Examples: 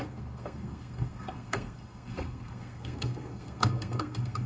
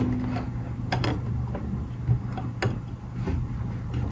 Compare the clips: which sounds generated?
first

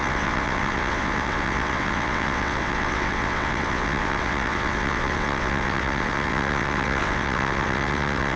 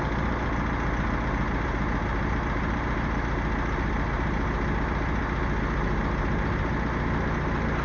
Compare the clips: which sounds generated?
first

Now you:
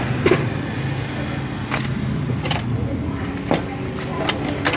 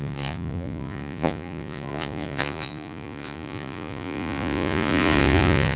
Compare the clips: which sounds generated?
second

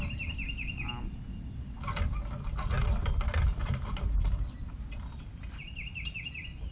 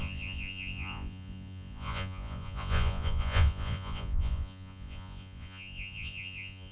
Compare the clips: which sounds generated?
second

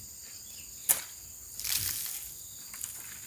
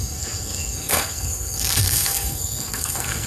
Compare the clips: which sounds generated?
second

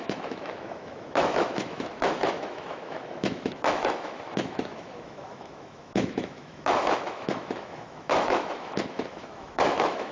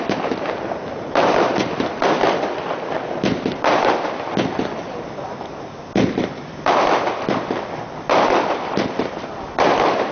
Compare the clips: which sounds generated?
first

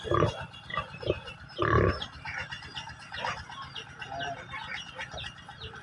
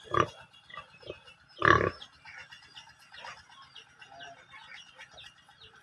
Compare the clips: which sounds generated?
first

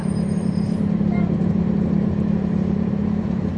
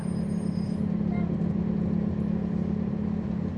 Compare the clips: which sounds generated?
first